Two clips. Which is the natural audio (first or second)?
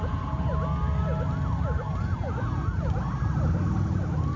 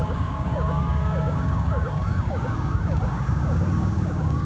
first